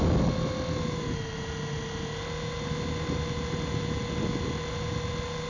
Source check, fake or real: real